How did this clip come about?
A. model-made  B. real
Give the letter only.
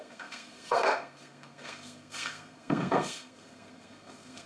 A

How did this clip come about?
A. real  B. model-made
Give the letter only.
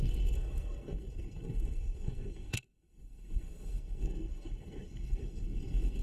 B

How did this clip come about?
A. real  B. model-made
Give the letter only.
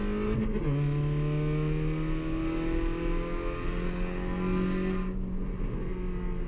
A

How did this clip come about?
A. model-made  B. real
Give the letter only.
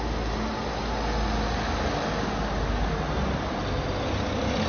B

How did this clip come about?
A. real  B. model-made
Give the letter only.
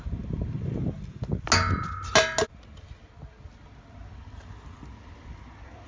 A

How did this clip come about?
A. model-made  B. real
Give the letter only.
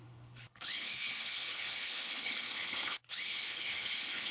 A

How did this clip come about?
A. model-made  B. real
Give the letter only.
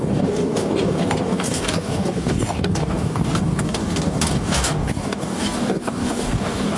A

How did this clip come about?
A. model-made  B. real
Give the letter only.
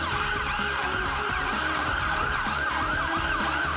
A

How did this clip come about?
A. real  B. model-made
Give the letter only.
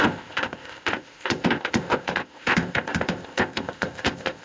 B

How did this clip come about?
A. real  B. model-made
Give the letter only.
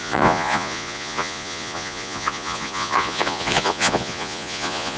B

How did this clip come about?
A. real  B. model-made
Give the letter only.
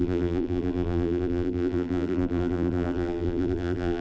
B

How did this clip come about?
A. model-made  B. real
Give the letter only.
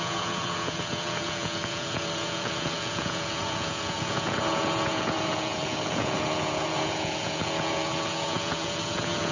A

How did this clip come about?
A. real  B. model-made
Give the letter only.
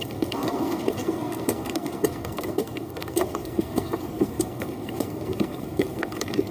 B